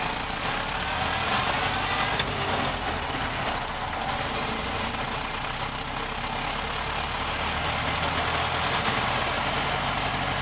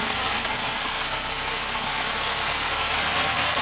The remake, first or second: second